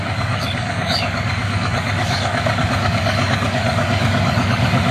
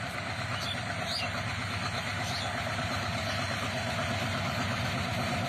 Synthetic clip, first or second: first